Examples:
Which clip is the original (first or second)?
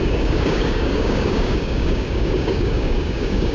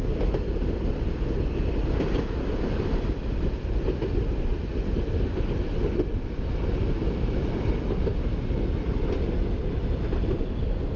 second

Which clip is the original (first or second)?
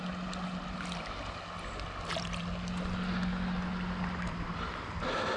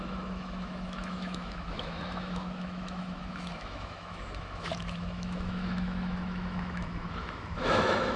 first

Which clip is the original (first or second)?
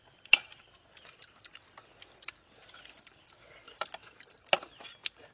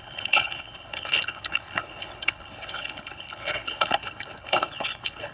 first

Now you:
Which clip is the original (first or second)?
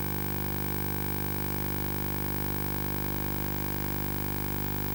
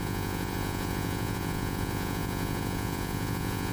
first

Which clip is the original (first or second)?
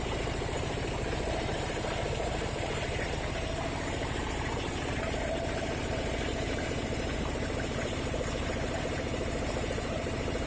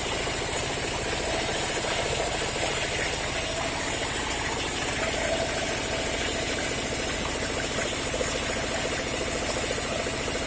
second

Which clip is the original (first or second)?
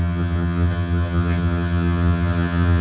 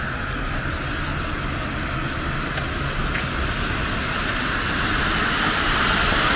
second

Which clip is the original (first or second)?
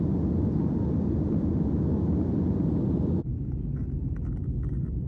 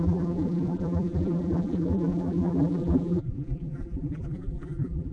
first